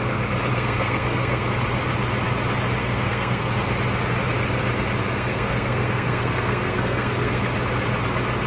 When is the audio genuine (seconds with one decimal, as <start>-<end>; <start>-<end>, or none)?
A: 0.0-0.5; 1.5-2.8; 3.5-5.0; 7.4-8.5